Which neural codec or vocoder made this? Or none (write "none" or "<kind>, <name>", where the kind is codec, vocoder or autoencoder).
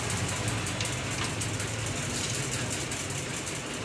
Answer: none